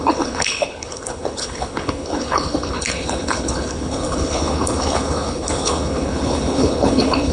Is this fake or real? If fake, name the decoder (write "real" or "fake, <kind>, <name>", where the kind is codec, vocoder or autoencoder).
fake, codec, HILCodec